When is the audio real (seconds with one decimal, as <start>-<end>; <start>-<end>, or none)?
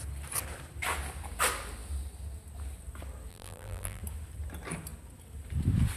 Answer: 0.0-3.3; 4.0-6.0